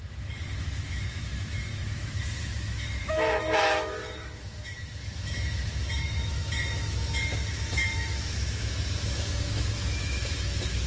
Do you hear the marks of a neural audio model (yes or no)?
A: yes